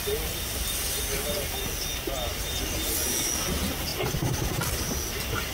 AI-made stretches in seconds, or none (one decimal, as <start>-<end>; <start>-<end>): 3.9-4.6